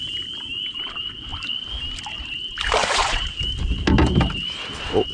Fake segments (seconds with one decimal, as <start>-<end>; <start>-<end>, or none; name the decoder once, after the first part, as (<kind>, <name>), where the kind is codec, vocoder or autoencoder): 2.8-3.4 (vocoder, Vocos)